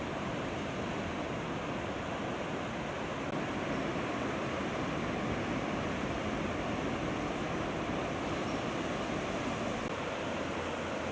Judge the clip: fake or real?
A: real